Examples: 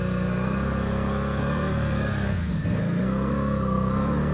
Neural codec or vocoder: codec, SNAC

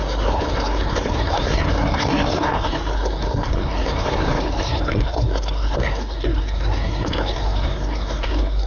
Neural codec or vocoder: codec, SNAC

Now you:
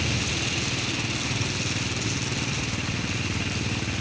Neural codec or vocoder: none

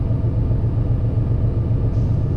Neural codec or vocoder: none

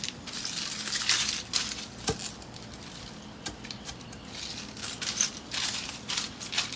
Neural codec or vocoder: none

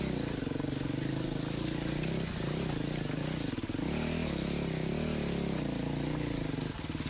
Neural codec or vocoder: none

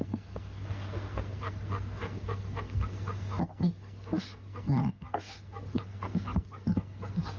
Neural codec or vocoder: codec, SNAC